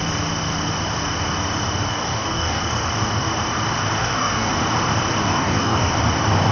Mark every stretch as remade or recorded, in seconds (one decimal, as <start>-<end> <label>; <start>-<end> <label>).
0.0-1.9 recorded; 1.9-2.6 remade; 2.6-4.0 recorded; 4.0-4.5 remade; 4.5-5.2 recorded; 5.2-5.9 remade; 5.9-6.5 recorded